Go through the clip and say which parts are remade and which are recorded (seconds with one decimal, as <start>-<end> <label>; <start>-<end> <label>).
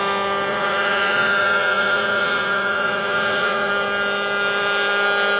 0.0-0.5 recorded; 0.5-3.7 remade; 3.7-5.4 recorded